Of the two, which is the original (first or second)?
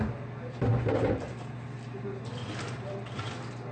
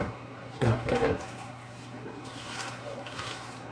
first